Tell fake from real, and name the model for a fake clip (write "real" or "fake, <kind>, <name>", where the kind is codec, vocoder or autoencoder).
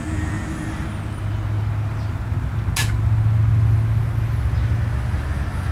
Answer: real